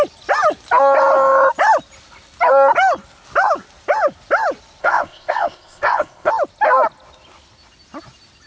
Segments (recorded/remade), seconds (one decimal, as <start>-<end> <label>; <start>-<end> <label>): 0.0-4.8 recorded; 4.8-6.3 remade; 6.3-8.5 recorded

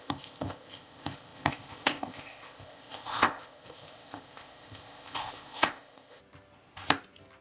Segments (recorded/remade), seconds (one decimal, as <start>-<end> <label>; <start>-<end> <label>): 0.0-6.2 remade; 6.2-7.4 recorded

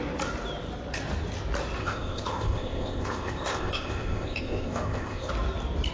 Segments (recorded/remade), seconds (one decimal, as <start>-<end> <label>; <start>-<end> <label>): 0.0-1.8 recorded; 1.8-5.3 remade; 5.3-5.9 recorded

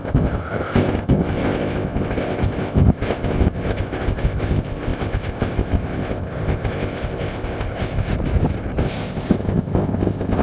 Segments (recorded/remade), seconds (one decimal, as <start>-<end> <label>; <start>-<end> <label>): 0.0-8.1 remade; 8.1-8.8 recorded; 8.8-10.4 remade

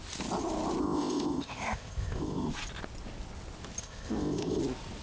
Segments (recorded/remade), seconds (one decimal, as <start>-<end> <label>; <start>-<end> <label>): 0.0-0.8 recorded; 0.8-2.5 remade; 2.5-3.8 recorded; 3.8-4.6 remade; 4.6-5.0 recorded